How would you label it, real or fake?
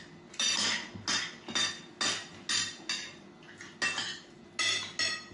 real